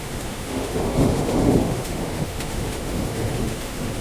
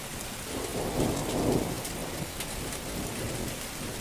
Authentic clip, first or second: second